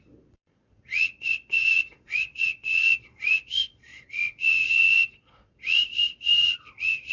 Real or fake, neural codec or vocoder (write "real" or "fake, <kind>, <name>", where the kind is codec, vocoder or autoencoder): fake, vocoder, Vocos